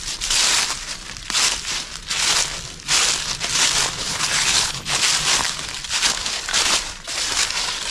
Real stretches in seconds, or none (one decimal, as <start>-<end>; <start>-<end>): 0.0-4.0; 5.0-7.9